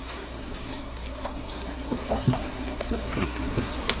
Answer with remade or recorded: remade